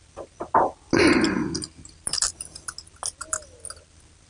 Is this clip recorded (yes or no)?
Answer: yes